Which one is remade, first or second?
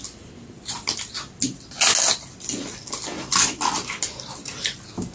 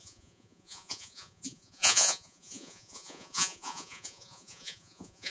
second